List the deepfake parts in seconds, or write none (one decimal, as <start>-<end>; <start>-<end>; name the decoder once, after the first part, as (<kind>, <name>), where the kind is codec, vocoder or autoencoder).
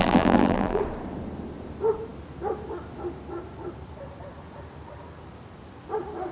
0.0-0.8 (vocoder, BigVGAN v2)